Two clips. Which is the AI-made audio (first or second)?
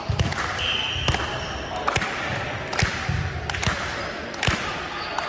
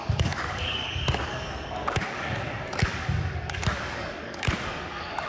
second